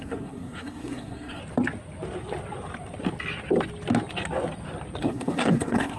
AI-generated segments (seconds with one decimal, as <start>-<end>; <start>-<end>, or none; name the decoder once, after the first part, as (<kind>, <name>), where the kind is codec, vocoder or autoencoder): 0.0-1.4 (codec, SNAC); 5.0-6.0